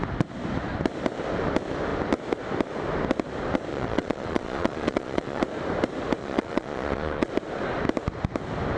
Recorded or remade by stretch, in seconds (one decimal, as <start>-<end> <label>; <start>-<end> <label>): 0.0-3.7 recorded; 3.7-5.4 remade; 5.4-6.2 recorded; 6.2-7.3 remade; 7.3-8.8 recorded